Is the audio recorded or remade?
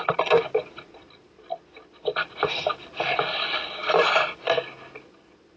recorded